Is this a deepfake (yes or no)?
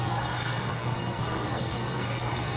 yes